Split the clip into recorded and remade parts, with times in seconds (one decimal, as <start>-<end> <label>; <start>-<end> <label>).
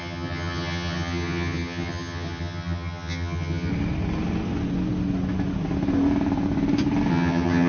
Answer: 0.0-3.7 remade; 3.7-7.1 recorded; 7.1-7.7 remade